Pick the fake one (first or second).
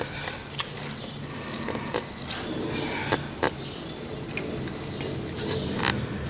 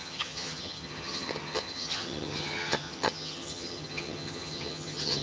second